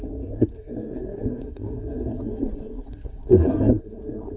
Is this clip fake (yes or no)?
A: yes